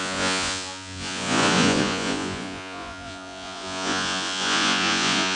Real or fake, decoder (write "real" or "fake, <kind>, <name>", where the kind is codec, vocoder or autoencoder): fake, vocoder, Vocos